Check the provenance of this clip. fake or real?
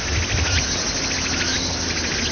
real